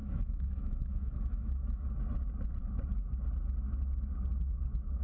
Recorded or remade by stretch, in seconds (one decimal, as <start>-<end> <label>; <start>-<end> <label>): 0.0-1.9 remade; 1.9-5.0 recorded